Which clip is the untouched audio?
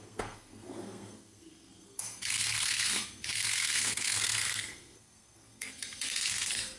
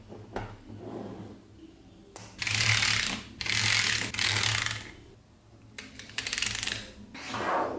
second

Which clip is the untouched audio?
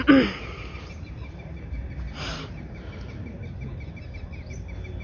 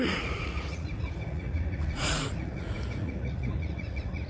first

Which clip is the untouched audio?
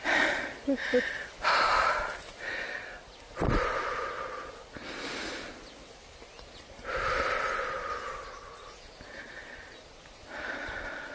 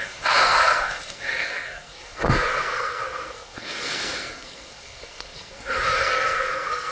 first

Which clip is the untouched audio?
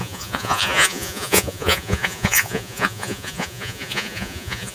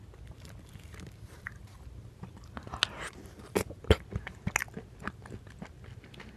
second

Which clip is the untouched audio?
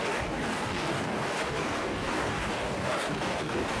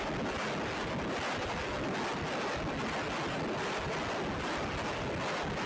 second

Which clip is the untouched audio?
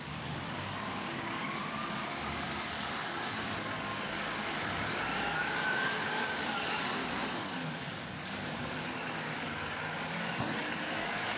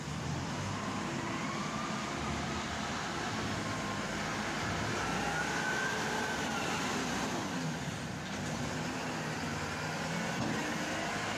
second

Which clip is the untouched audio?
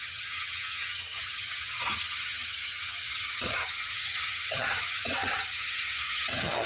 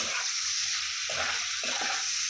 second